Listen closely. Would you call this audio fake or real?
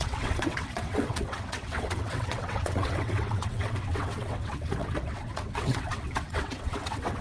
fake